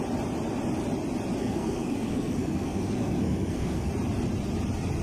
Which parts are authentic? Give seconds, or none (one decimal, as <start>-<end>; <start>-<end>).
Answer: 0.0-1.4; 3.9-5.0